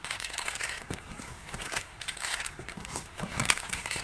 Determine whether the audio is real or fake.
fake